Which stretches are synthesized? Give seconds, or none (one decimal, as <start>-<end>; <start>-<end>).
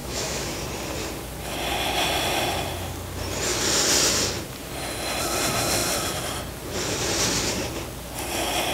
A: 0.0-0.5